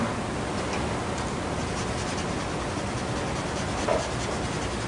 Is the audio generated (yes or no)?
no